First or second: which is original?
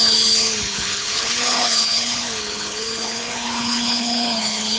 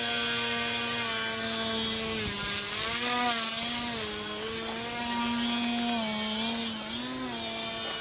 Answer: second